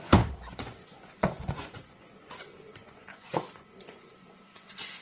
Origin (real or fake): fake